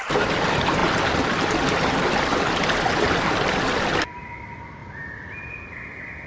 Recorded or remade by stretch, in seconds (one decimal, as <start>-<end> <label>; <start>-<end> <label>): 0.0-4.8 recorded; 4.8-5.5 remade; 5.5-6.3 recorded